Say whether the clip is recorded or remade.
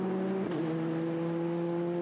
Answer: recorded